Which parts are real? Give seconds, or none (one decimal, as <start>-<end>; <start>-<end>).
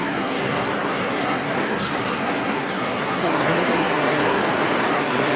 4.4-4.9